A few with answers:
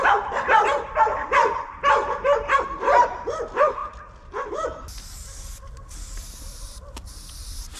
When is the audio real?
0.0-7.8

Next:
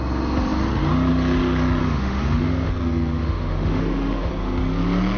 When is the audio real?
0.0-1.8; 2.7-3.2; 4.3-5.2